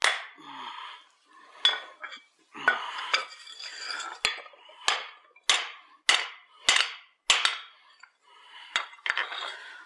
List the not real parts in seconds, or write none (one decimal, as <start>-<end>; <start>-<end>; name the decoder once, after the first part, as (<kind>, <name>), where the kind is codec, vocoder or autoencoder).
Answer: none